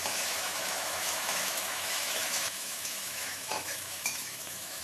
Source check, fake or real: fake